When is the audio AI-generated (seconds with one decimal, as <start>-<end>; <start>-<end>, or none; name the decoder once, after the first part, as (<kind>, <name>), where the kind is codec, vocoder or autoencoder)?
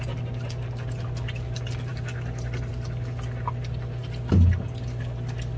none